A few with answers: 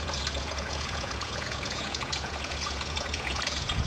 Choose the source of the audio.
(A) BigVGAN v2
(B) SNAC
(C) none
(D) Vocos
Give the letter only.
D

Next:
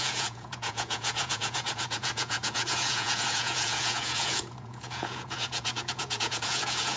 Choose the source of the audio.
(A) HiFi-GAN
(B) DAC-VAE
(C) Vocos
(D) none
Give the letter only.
C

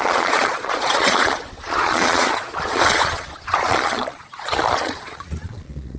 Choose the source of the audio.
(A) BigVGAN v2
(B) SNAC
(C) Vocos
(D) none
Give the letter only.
C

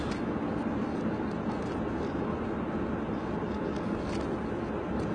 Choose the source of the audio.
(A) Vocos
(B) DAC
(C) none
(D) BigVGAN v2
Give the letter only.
C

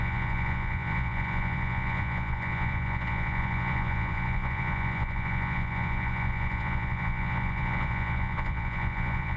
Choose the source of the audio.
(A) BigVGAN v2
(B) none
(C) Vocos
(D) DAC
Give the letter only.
C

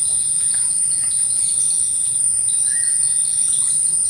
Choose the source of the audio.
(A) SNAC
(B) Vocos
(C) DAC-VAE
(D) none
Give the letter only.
D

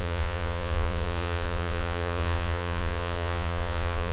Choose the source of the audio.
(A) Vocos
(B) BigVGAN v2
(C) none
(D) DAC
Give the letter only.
A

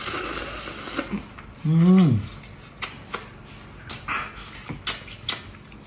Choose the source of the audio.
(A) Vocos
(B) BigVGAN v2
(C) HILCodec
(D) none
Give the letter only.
D